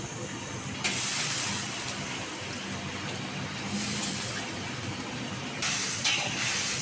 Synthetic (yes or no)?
no